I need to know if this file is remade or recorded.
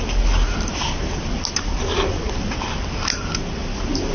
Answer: recorded